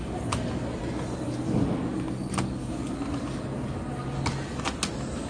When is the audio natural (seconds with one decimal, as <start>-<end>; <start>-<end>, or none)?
0.0-5.3